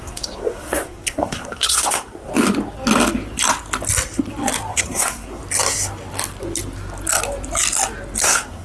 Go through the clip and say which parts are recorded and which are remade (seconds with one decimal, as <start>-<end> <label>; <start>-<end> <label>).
0.0-2.3 remade; 2.3-4.7 recorded; 4.7-5.4 remade; 5.4-8.2 recorded; 8.2-8.6 remade